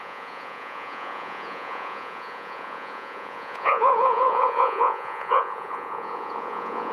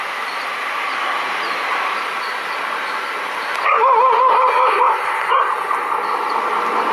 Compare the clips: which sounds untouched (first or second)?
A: second